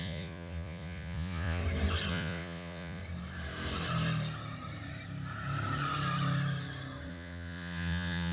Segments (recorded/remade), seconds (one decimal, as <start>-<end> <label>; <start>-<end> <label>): 0.0-1.6 remade; 1.6-2.1 recorded; 2.1-3.0 remade; 3.0-7.1 recorded; 7.1-8.3 remade